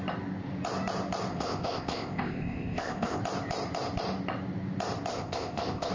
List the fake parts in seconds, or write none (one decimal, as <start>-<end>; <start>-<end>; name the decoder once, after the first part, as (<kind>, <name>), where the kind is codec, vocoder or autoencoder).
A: 1.3-3.2 (codec, ZipCodec); 5.1-5.9